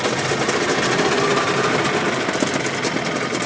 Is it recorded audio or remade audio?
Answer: recorded